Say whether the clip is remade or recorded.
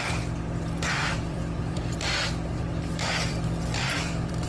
remade